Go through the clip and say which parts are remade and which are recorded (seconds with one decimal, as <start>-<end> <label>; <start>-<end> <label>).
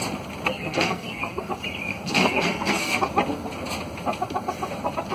0.0-0.5 recorded; 0.5-1.5 remade; 1.5-1.9 recorded; 1.9-3.0 remade; 3.0-5.1 recorded